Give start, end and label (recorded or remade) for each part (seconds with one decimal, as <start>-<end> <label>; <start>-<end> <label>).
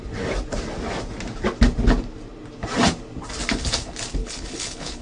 0.0-4.2 recorded; 4.2-5.0 remade